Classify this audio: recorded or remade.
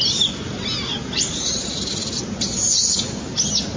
recorded